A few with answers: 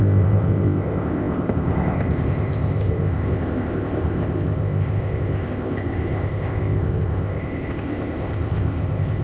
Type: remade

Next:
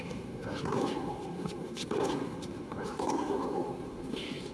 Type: remade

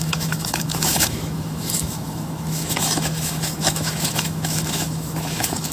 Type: remade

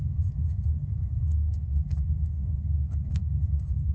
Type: remade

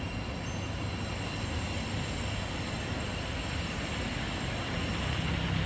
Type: recorded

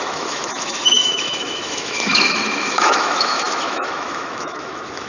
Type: remade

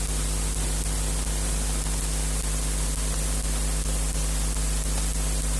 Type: recorded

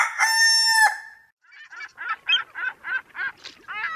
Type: recorded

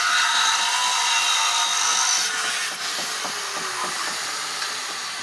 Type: remade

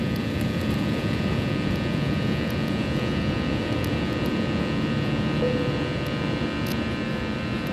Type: remade